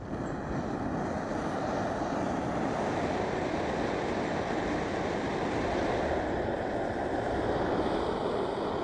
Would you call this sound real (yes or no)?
no